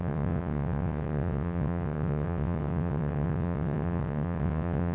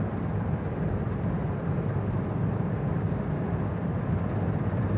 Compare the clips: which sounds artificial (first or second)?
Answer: first